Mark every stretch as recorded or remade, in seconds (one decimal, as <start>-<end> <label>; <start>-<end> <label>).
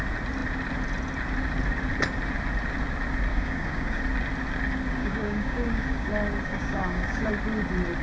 0.0-3.3 recorded; 3.3-4.0 remade; 4.0-5.0 recorded; 5.0-6.1 remade; 6.1-6.5 recorded; 6.5-7.3 remade; 7.3-8.0 recorded